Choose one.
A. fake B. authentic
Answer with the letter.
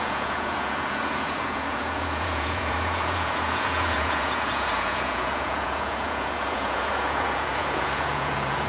A